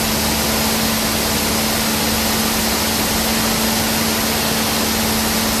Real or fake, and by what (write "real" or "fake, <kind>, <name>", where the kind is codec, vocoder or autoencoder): real